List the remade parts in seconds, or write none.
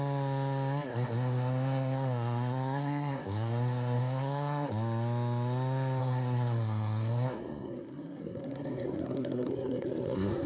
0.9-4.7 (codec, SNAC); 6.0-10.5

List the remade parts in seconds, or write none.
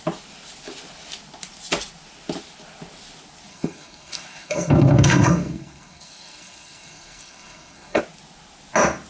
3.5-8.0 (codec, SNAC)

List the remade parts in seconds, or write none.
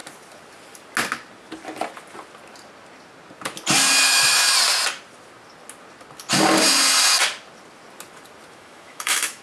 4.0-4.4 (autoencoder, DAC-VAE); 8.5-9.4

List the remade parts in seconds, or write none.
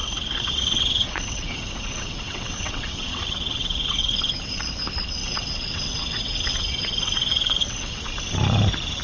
0.0-4.6 (vocoder, WaveNeXt); 5.2-8.0